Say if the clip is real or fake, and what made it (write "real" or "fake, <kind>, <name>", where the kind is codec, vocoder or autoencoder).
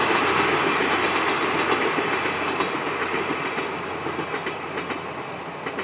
real